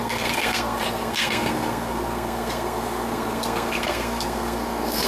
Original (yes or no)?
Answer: no